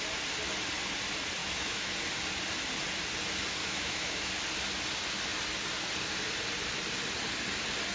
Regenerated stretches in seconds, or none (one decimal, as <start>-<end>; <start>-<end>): 1.4-1.9; 3.6-4.3